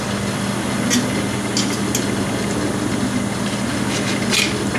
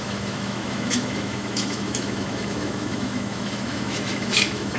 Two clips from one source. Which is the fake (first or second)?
second